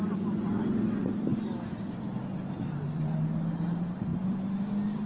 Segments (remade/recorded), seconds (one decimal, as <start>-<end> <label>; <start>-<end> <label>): 0.0-1.3 remade; 1.3-2.6 recorded; 2.6-4.1 remade; 4.1-5.1 recorded